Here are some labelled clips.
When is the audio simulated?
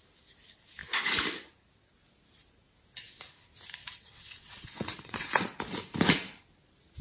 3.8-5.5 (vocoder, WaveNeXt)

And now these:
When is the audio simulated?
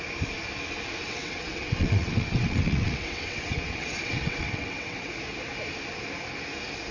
1.0-5.1 (vocoder, WaveNeXt)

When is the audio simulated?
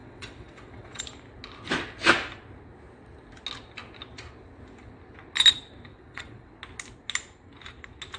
0.0-1.0 (vocoder, WaveNeXt); 5.9-6.5